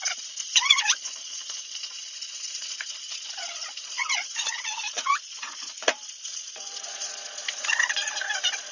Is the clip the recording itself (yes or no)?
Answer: no